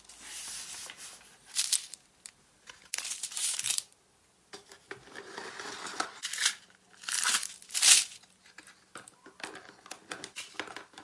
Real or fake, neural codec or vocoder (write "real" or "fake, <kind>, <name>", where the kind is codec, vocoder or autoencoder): real